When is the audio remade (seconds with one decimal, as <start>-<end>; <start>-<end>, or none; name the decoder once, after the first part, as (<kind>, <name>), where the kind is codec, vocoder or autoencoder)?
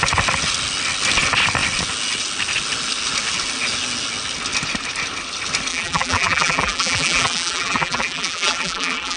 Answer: 5.7-9.2 (vocoder, BigVGAN v2)